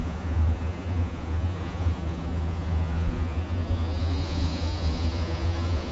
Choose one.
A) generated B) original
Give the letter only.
A